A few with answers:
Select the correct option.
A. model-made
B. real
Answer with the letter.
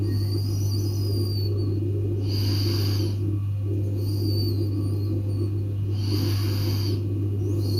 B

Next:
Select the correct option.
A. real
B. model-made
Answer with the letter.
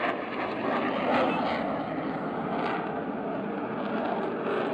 A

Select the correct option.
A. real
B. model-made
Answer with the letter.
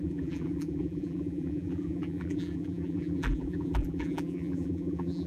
B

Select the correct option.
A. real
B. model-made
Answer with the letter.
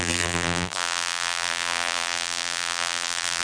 B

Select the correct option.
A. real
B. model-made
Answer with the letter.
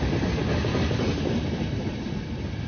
A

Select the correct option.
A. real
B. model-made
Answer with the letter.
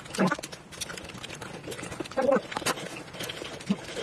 B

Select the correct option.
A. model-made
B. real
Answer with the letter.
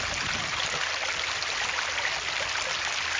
B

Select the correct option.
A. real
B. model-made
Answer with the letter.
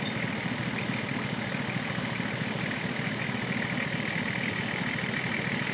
B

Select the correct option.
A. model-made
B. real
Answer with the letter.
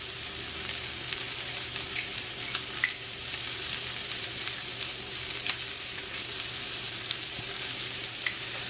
A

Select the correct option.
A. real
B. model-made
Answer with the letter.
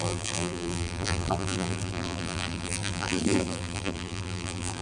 B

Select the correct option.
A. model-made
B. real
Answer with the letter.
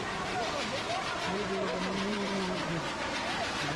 A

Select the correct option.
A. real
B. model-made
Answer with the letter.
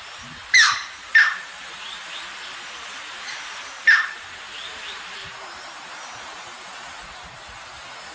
B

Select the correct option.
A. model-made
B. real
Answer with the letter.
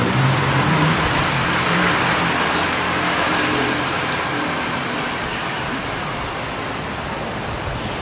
A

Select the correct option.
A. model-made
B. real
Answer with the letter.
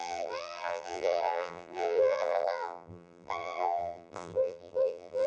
A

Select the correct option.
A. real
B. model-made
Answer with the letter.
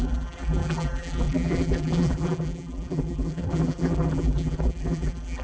B